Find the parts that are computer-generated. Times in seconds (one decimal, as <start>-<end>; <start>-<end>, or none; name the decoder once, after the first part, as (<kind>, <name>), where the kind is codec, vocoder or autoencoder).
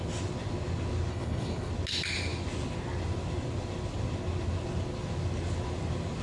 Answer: 1.1-1.7 (codec, HILCodec)